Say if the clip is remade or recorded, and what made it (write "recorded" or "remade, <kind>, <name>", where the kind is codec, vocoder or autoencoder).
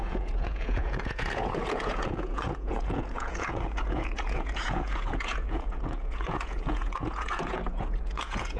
remade, vocoder, Vocos